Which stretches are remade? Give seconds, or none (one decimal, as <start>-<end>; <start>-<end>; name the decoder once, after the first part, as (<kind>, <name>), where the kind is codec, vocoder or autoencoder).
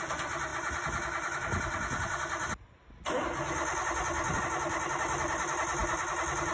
none